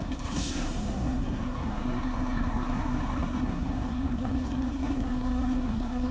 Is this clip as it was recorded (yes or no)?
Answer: no